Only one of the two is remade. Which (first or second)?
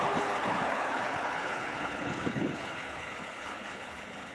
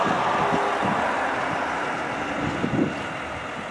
first